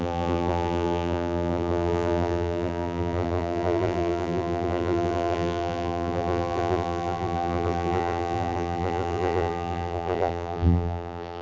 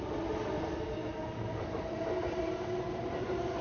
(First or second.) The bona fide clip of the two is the second